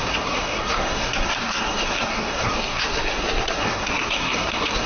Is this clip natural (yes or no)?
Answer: no